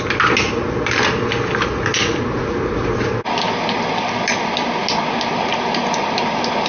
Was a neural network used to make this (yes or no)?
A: no